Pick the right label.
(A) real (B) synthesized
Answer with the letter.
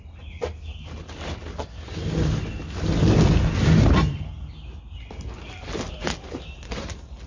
A